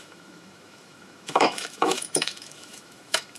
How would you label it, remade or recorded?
remade